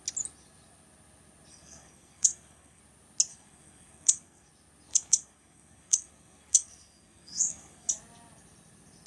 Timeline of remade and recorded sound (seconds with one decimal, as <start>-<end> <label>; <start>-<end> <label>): 0.0-1.5 recorded; 1.5-2.8 remade; 2.8-3.3 recorded; 3.3-4.5 remade; 4.5-4.9 recorded; 4.9-7.9 remade; 7.9-9.1 recorded